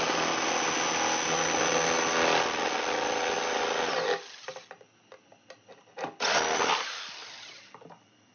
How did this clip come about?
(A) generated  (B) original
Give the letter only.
B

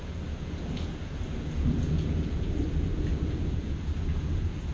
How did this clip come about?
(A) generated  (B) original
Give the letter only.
A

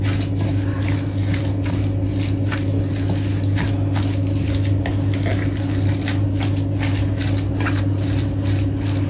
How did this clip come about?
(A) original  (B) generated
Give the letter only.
A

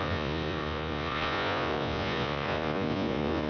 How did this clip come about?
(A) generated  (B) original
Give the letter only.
A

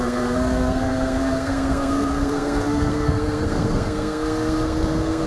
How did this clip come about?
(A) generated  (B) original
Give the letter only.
A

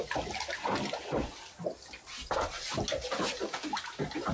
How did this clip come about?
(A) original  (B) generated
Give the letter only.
A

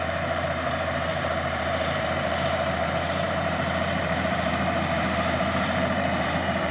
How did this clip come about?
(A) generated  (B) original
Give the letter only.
A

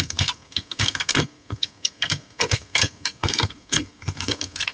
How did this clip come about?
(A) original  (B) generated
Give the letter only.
B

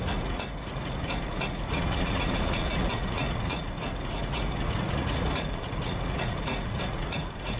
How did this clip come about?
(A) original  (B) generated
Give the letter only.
B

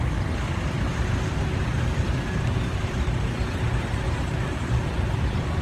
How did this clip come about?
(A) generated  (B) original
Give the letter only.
A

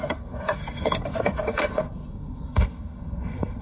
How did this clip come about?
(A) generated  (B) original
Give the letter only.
A